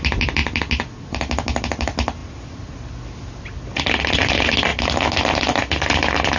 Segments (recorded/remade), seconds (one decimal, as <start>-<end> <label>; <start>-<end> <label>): 0.0-0.4 remade; 0.4-1.1 recorded; 1.1-4.7 remade; 4.7-5.3 recorded; 5.3-6.4 remade